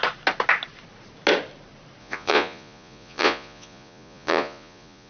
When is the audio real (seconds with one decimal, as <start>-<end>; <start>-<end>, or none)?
0.0-2.0